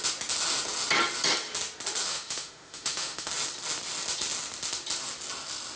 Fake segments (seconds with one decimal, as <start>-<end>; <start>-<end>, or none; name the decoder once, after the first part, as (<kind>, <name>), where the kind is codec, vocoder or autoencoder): 2.1-3.3 (autoencoder, DAC-VAE)